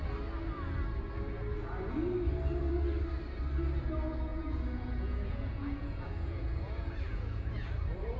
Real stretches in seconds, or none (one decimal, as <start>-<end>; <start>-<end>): 0.0-4.3; 7.7-8.2